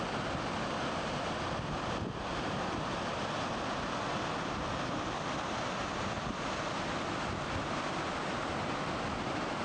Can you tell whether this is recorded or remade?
recorded